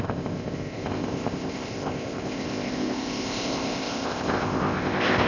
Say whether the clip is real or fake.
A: fake